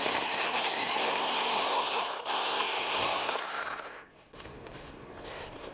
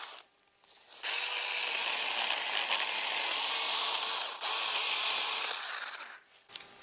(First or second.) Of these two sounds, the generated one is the first